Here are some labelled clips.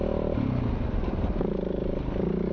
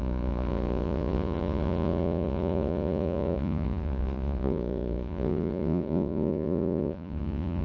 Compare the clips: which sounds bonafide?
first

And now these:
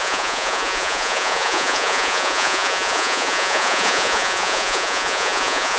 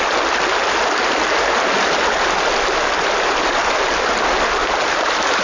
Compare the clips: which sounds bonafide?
second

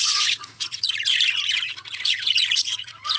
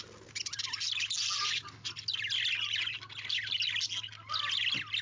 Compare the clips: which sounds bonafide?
second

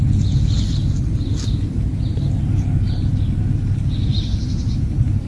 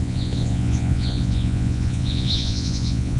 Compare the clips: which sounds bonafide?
first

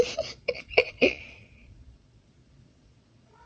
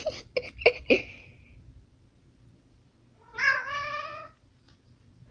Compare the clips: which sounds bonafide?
second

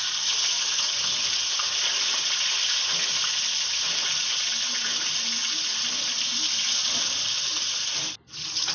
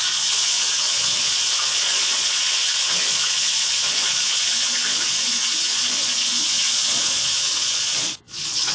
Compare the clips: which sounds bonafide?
first